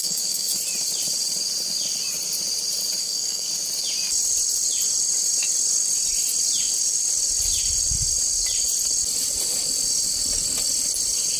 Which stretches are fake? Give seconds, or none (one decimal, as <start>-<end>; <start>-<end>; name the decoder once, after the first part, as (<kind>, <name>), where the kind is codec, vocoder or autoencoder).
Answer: 0.0-0.5 (codec, SNAC); 3.0-3.5

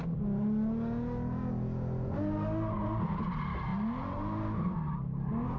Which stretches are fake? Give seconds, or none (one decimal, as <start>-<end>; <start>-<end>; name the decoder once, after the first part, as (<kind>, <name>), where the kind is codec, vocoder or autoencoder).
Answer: none

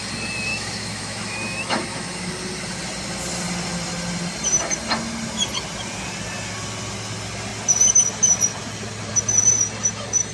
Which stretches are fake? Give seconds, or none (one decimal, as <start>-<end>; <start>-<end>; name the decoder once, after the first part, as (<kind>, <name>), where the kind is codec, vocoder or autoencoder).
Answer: 0.5-2.3 (autoencoder, DAC-VAE)

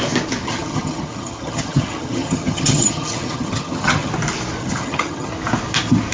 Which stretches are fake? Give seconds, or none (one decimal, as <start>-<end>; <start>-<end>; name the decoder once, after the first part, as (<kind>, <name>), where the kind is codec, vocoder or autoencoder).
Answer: 0.4-4.1 (vocoder, HiFi-GAN); 4.6-5.3